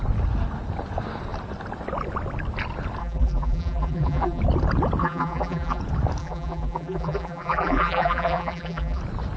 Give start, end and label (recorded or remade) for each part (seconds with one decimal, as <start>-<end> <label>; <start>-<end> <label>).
0.0-3.0 recorded; 3.0-4.4 remade; 4.4-5.0 recorded; 5.0-5.8 remade; 5.8-6.2 recorded; 6.2-9.0 remade; 9.0-9.4 recorded